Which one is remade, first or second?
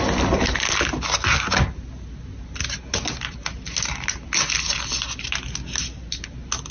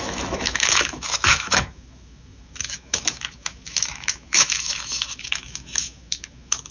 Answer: second